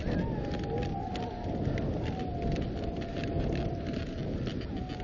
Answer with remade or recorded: recorded